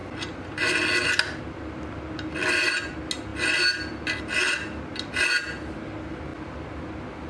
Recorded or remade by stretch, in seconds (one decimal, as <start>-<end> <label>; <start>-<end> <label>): 0.0-7.3 recorded